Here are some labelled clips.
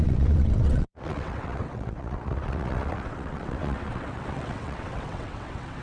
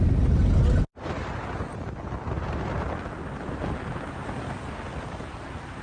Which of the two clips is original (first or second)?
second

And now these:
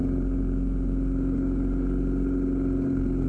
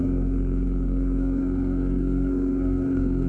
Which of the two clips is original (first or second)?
first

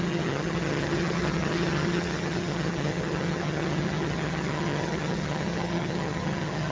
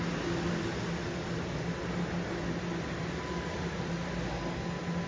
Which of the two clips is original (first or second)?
second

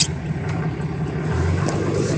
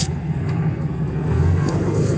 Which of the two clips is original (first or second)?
first